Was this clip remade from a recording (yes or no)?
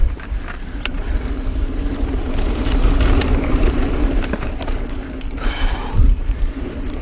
yes